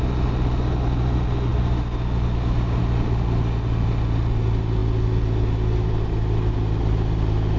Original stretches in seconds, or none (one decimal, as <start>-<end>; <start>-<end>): 0.0-7.6